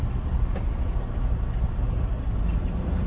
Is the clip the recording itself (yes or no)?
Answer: yes